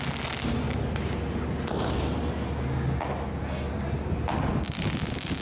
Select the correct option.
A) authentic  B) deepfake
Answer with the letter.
A